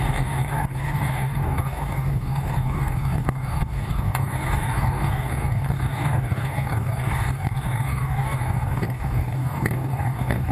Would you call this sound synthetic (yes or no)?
yes